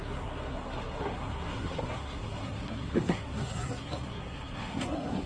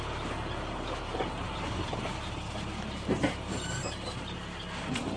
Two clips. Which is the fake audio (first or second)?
first